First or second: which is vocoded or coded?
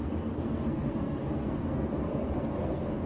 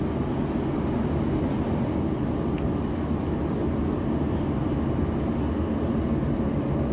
first